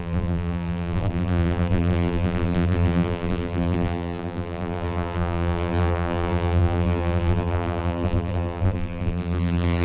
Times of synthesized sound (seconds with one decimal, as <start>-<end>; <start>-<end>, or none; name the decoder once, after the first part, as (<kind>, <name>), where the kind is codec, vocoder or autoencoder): 0.0-9.8 (vocoder, BigVGAN v2)